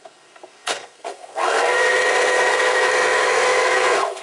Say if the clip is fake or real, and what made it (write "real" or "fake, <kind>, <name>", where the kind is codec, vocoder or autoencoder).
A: fake, codec, SNAC